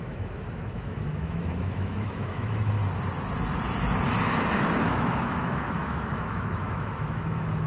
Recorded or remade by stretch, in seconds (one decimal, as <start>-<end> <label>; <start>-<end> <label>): 0.0-2.8 remade; 2.8-4.8 recorded; 4.8-7.7 remade